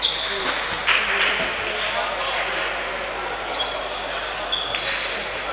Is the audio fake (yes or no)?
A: no